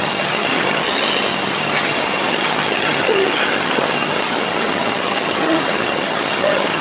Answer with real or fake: fake